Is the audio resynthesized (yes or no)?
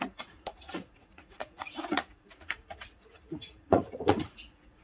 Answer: yes